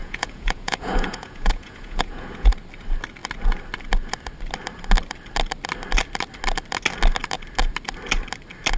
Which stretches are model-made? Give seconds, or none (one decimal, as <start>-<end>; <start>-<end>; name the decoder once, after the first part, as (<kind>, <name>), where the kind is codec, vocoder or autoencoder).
0.0-2.5 (vocoder, Vocos)